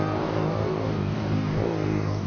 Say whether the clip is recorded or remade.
remade